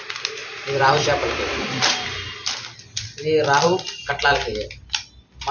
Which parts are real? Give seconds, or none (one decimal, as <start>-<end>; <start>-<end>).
0.0-0.4; 2.5-3.6; 4.1-5.5